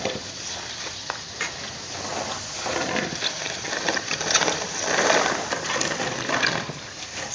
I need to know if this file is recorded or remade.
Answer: remade